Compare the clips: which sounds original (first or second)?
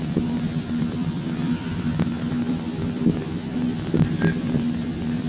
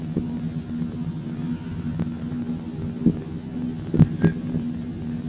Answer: second